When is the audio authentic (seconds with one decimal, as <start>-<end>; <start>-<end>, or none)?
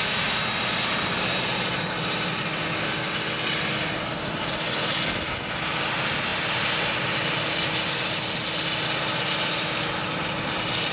0.0-10.9